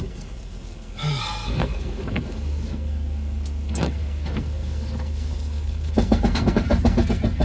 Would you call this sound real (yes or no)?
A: no